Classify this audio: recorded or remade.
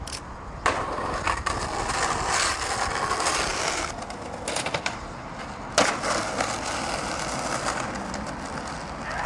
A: recorded